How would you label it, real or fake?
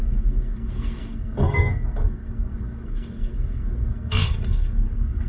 fake